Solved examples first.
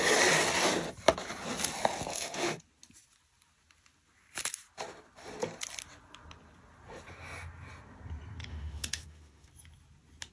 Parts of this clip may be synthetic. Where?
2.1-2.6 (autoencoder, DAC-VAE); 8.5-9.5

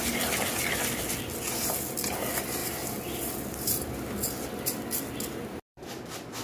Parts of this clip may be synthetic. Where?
2.6-3.9 (vocoder, BigVGAN v2)

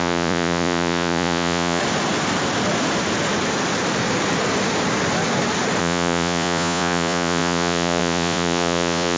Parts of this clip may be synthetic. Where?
0.0-1.8 (vocoder, Vocos); 5.8-9.2

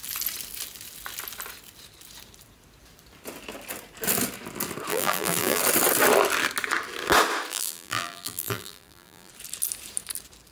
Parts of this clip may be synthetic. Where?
4.9-5.6 (vocoder, BigVGAN v2); 7.5-9.3

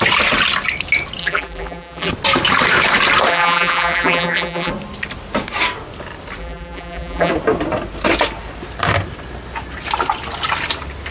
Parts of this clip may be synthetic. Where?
1.2-2.1 (vocoder, BigVGAN v2); 3.3-4.7; 6.4-7.3

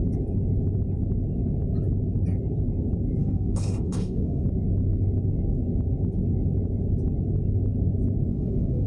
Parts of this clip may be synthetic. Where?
3.2-4.4 (autoencoder, DAC-VAE); 8.3-8.9

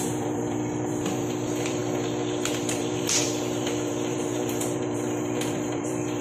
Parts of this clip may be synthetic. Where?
0.0-1.8 (vocoder, BigVGAN v2); 2.5-6.2

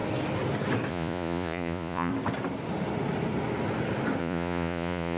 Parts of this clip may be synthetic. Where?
0.9-2.1 (vocoder, Vocos); 4.2-5.2